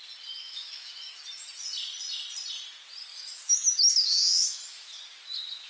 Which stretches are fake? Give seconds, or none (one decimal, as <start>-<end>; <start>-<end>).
0.4-1.2; 3.1-5.7